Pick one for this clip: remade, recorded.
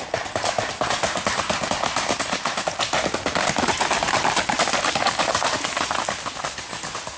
recorded